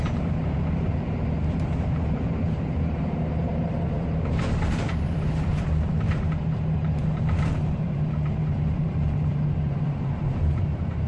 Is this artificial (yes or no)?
yes